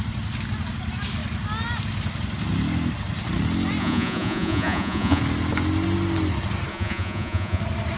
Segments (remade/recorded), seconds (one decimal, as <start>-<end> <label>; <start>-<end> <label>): 0.0-3.8 recorded; 3.8-5.2 remade; 5.2-6.7 recorded; 6.7-7.6 remade; 7.6-8.0 recorded